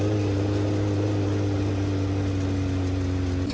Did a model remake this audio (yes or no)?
no